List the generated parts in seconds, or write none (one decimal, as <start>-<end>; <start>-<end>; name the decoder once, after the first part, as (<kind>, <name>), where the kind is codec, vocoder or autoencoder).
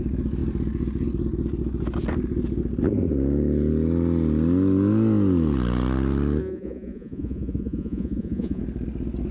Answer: 6.4-8.6 (vocoder, Vocos)